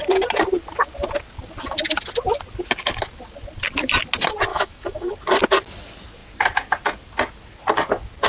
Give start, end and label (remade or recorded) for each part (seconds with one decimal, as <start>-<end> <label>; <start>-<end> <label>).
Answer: 0.0-4.5 recorded; 4.5-5.1 remade; 5.1-8.3 recorded